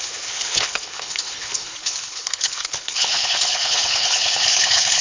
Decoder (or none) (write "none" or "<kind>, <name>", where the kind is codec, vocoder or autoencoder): codec, HILCodec